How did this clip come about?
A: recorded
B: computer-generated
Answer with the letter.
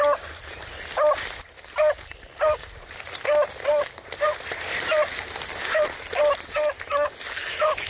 A